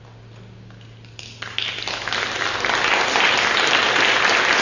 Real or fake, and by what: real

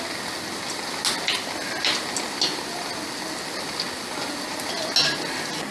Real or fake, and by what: real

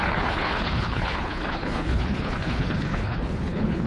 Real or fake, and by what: fake, codec, HILCodec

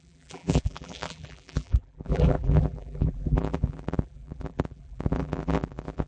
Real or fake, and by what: fake, vocoder, BigVGAN v2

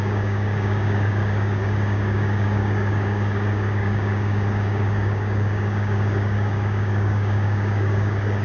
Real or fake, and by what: fake, codec, DAC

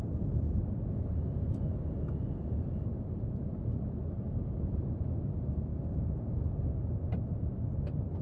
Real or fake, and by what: real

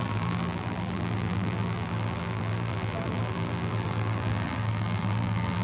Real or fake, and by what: fake, vocoder, BigVGAN v2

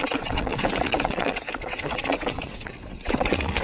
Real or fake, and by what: fake, vocoder, WaveNeXt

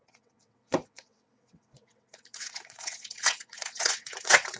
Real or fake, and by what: fake, vocoder, WaveNeXt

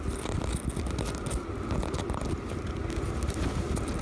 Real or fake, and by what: real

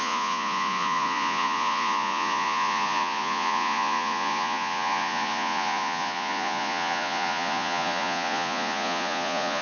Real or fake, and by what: fake, vocoder, Vocos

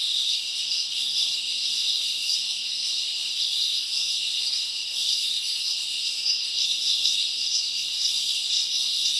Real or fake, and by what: fake, codec, SNAC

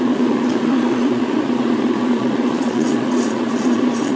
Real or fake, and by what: fake, vocoder, Vocos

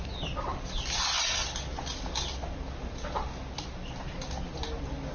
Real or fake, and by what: real